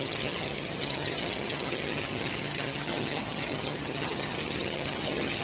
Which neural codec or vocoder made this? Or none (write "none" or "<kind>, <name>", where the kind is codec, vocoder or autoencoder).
vocoder, HiFi-GAN